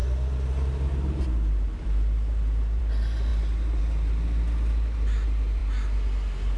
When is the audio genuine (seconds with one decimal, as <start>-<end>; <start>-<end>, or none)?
0.0-6.6